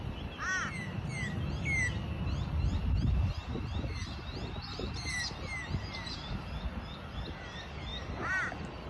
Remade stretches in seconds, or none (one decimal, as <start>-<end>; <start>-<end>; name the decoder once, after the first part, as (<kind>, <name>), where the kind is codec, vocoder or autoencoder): none